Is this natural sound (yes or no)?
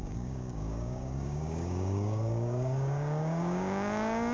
no